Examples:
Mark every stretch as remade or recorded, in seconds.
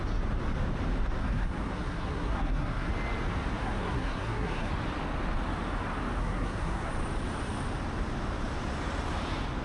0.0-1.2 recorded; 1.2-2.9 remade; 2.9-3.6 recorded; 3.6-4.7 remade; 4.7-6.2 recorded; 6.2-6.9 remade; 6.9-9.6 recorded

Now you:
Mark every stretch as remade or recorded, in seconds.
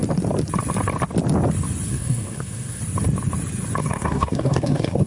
0.0-1.9 recorded; 1.9-2.8 remade; 2.8-3.8 recorded; 3.8-5.1 remade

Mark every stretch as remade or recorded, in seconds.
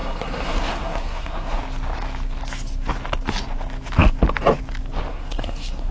0.0-1.6 remade; 1.6-5.1 recorded; 5.1-5.9 remade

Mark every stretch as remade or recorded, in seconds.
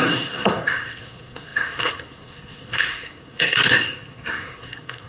0.0-5.1 remade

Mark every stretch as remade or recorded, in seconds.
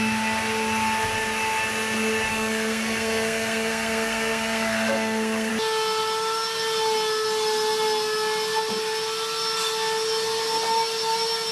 0.0-2.3 recorded; 2.3-5.5 remade; 5.5-11.5 recorded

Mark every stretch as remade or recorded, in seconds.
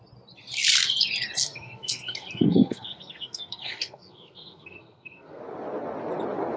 0.0-1.4 recorded; 1.4-5.4 remade; 5.4-6.6 recorded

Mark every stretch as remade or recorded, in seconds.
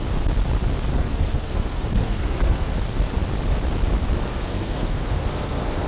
0.0-0.9 recorded; 0.9-2.7 remade; 2.7-4.3 recorded; 4.3-5.9 remade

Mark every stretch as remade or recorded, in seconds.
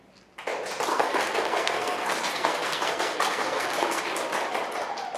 0.0-0.9 recorded; 0.9-4.0 remade; 4.0-5.2 recorded